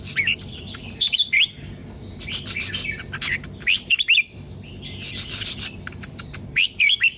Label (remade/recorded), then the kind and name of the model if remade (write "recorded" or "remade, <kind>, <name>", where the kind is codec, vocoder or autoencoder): remade, vocoder, BigVGAN v2